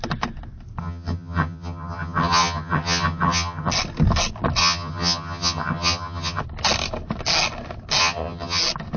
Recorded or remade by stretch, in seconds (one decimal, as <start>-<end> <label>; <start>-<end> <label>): 0.0-0.8 recorded; 0.8-3.7 remade; 3.7-4.6 recorded; 4.6-6.4 remade; 6.4-8.0 recorded; 8.0-8.6 remade; 8.6-9.0 recorded